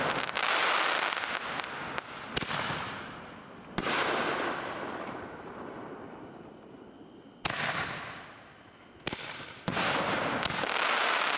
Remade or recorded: recorded